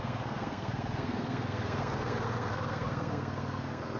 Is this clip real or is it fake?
fake